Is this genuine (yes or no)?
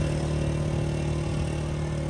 yes